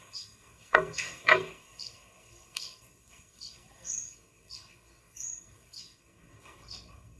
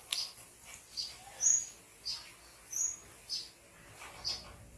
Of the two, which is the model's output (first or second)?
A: first